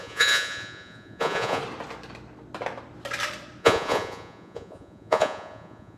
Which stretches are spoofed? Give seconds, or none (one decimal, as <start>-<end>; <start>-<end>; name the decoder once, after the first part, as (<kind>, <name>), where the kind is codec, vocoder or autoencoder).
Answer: 0.0-1.6 (vocoder, Vocos); 3.6-6.0